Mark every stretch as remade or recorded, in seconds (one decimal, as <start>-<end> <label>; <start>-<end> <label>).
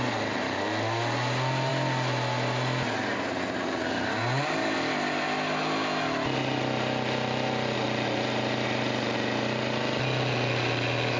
0.0-11.2 recorded